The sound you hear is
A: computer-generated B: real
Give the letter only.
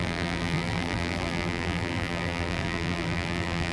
A